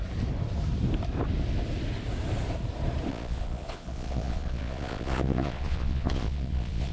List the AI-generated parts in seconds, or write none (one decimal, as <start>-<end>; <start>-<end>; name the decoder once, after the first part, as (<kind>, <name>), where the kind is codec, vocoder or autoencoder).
3.1-6.9 (vocoder, Vocos)